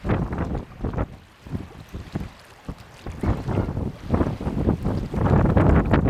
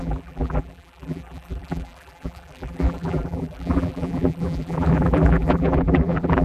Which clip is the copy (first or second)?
second